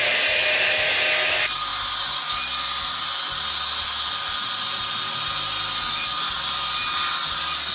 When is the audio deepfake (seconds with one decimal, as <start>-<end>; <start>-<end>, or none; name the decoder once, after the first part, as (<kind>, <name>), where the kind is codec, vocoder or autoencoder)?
none